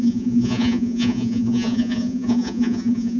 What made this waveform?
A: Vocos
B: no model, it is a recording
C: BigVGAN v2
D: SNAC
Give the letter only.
A